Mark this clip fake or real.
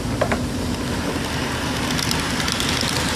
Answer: real